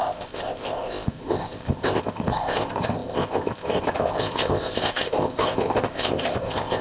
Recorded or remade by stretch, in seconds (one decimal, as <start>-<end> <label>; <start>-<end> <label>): 0.0-6.8 remade